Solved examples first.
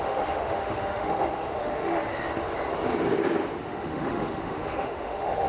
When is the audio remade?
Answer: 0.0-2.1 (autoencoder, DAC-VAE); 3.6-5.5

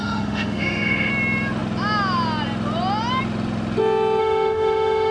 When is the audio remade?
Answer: 0.0-1.1 (autoencoder, DAC-VAE); 4.2-5.1

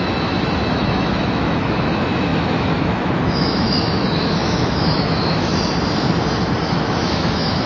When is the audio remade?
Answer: 0.0-5.5 (autoencoder, DAC-VAE); 6.6-7.7

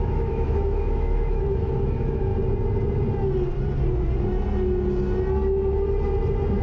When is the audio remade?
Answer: 0.0-2.3 (autoencoder, DAC-VAE)

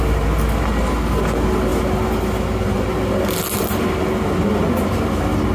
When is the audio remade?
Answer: none

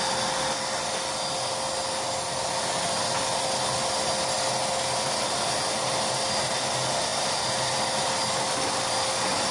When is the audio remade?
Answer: none

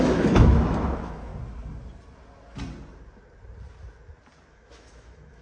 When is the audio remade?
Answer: 0.0-1.3 (autoencoder, DAC-VAE); 4.5-5.4